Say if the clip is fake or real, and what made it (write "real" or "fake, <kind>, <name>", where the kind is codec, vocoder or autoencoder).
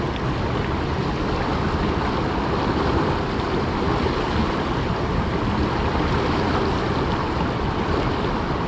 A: real